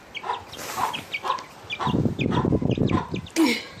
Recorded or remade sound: recorded